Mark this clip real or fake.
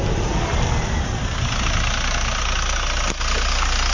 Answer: real